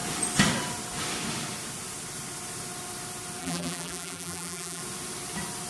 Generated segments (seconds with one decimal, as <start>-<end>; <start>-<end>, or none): 3.4-4.8